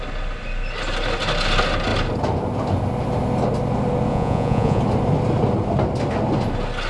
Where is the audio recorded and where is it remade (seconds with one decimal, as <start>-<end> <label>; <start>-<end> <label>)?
0.0-4.1 recorded; 4.1-4.8 remade; 4.8-6.9 recorded